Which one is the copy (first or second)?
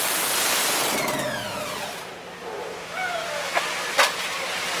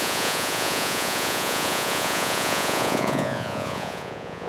second